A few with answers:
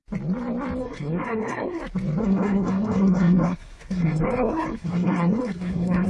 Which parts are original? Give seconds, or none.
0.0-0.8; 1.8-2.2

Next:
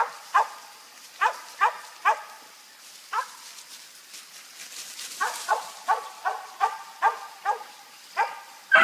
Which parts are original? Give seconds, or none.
0.0-8.8

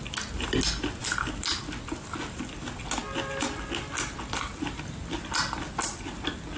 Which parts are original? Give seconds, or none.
0.0-1.0; 1.6-6.6

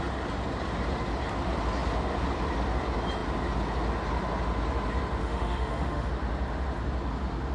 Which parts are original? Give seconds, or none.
0.0-5.2; 6.1-7.5